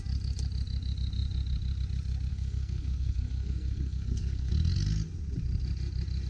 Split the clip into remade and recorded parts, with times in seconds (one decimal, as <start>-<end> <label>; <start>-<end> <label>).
0.0-2.3 recorded; 2.3-4.5 remade; 4.5-6.3 recorded